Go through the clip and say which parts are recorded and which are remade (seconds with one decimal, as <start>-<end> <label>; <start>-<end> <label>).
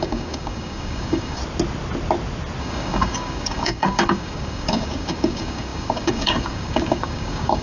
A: 0.0-1.4 remade; 1.4-2.6 recorded; 2.6-7.6 remade